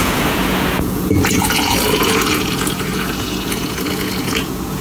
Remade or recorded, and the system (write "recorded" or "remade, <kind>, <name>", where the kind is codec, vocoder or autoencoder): remade, vocoder, Vocos